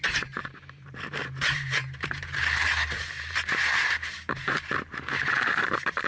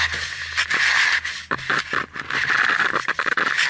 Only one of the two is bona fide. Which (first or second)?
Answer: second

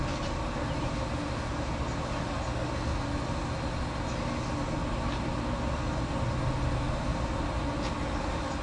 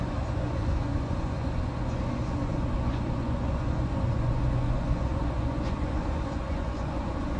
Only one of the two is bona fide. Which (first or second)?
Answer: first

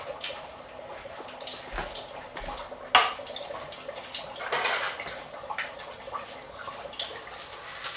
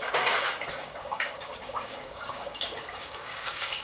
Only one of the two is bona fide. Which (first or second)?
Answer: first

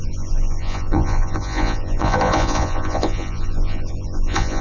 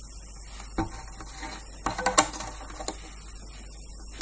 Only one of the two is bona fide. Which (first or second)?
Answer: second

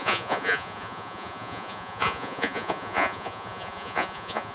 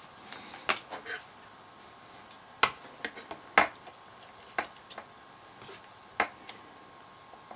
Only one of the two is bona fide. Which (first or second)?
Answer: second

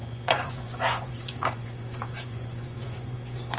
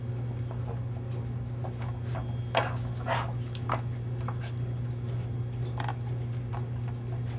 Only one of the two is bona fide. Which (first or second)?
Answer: second